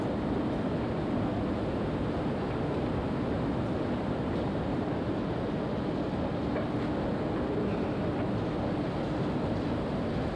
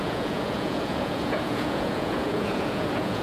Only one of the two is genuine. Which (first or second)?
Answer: first